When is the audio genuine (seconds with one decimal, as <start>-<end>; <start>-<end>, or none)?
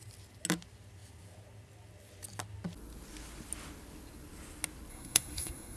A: 0.0-4.9